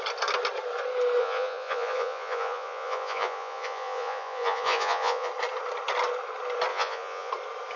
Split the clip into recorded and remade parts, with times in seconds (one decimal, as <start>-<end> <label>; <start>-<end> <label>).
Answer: 0.0-1.2 recorded; 1.2-5.3 remade; 5.3-6.7 recorded; 6.7-7.3 remade; 7.3-7.8 recorded